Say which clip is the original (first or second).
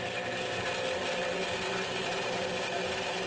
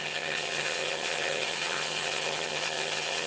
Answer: first